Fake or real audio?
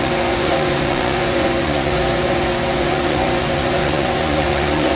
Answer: fake